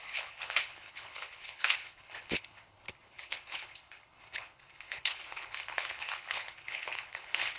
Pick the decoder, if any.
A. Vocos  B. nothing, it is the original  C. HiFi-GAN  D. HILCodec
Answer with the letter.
D